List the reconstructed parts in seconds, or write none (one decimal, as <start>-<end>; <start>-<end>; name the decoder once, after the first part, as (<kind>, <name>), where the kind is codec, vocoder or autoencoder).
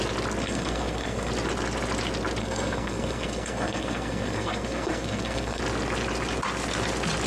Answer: 0.4-1.3 (codec, SNAC); 2.4-5.6